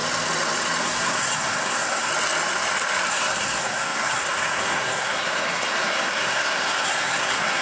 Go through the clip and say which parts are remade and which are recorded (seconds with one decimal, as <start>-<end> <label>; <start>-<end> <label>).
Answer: 0.0-0.8 recorded; 0.8-2.1 remade; 2.1-3.1 recorded; 3.1-7.6 remade